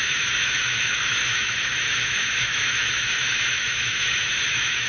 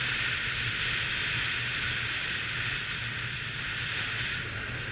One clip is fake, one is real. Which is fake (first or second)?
first